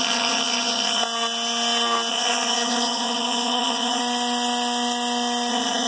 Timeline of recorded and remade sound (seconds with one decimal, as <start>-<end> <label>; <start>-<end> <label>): 0.0-1.0 remade; 1.0-2.1 recorded; 2.1-4.0 remade; 4.0-5.5 recorded; 5.5-5.9 remade